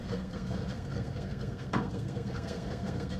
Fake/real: fake